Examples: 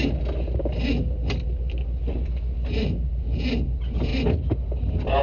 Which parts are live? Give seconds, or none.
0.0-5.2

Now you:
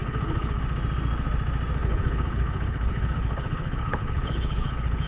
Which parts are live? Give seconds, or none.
0.6-1.8

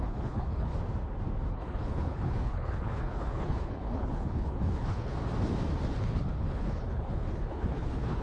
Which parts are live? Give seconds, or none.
0.7-1.5; 5.1-6.0

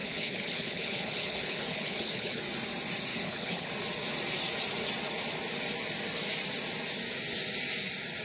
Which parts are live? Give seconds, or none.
2.4-3.1; 3.7-8.2

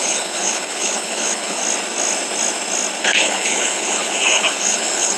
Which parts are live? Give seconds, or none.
1.6-3.0

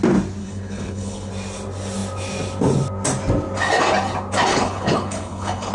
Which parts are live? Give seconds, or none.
0.0-0.4; 1.3-4.5

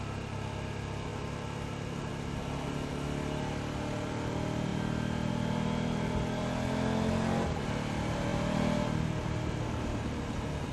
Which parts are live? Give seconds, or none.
0.0-10.7